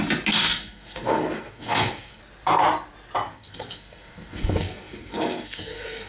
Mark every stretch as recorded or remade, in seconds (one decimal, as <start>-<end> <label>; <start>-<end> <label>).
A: 0.0-0.4 recorded; 0.4-2.2 remade; 2.2-3.3 recorded; 3.3-6.1 remade